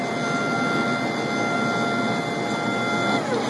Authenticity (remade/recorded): recorded